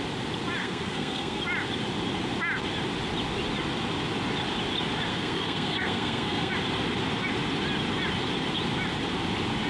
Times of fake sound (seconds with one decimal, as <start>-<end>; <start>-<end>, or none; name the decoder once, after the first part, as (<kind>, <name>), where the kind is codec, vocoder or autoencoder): 0.6-1.4 (codec, SNAC); 5.1-6.5

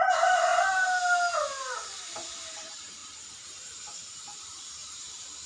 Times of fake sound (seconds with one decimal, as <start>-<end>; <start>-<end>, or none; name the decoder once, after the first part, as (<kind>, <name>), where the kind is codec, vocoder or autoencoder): 0.0-0.5 (vocoder, BigVGAN v2); 1.0-5.5

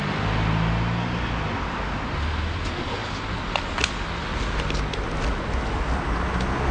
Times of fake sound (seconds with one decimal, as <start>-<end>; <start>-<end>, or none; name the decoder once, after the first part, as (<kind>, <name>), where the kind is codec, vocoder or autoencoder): none

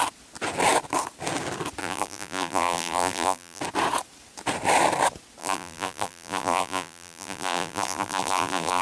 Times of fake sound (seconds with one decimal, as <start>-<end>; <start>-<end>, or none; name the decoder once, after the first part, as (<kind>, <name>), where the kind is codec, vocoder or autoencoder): 1.8-3.6 (vocoder, BigVGAN v2); 5.4-8.8

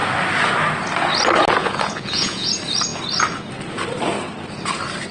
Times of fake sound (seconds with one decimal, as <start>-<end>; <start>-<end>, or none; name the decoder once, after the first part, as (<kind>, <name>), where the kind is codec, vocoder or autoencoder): 1.6-2.5 (vocoder, Vocos)

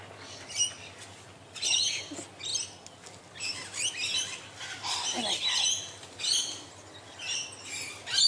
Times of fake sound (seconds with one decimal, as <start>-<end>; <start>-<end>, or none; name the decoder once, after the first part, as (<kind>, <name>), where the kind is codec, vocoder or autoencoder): none

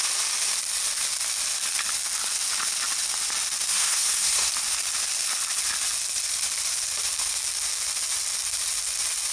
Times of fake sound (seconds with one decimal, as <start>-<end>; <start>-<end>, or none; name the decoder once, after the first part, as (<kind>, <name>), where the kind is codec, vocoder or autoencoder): 3.7-4.5 (codec, SNAC)